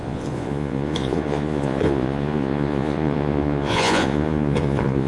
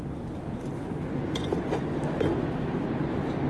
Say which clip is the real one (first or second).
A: second